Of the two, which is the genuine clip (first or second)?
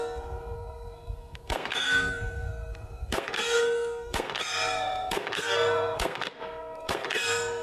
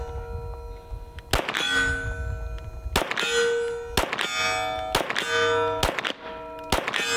second